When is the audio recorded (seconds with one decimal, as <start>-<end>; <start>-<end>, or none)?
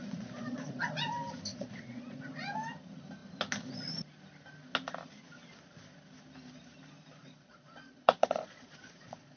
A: 1.0-1.5; 2.2-7.2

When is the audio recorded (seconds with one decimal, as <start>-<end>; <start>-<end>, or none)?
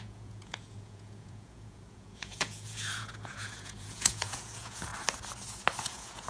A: 4.9-5.8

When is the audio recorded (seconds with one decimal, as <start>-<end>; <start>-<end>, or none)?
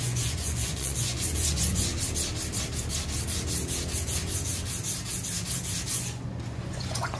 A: 1.9-5.9